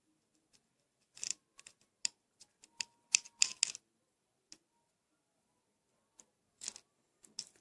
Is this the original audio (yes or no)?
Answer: no